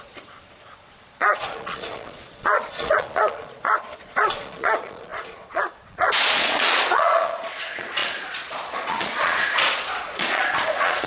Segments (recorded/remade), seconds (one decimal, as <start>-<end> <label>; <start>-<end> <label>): 0.0-11.1 remade